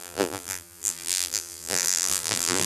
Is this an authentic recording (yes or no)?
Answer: no